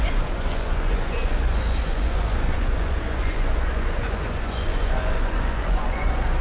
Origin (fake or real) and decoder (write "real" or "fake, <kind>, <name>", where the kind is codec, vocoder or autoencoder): fake, vocoder, Vocos